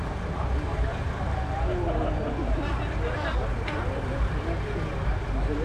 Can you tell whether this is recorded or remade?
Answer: recorded